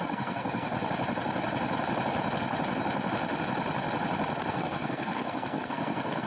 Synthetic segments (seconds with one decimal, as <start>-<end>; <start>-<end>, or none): 0.0-0.7; 4.5-6.3